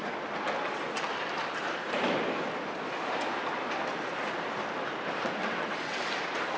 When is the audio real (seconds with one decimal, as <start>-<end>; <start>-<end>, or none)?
0.0-5.4; 6.0-6.6